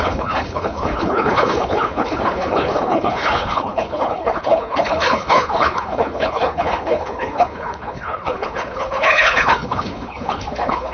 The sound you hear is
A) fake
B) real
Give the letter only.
A